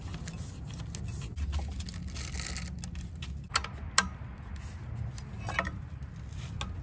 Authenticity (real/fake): real